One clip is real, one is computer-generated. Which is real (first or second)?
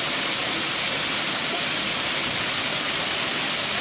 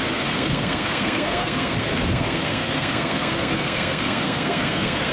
first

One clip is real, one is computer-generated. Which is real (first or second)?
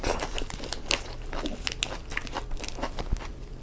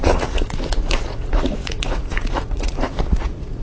first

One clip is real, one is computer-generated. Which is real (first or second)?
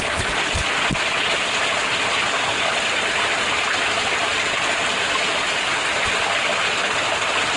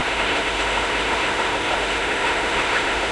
first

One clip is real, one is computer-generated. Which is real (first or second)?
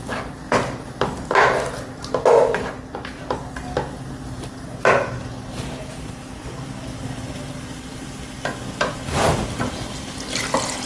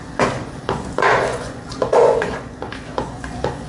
first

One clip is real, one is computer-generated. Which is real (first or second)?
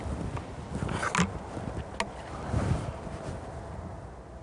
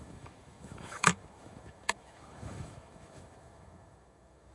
first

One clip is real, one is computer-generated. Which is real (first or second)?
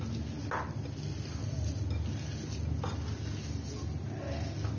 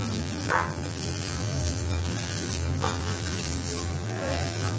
first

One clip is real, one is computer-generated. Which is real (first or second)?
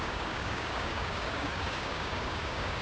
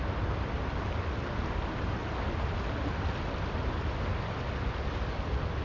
second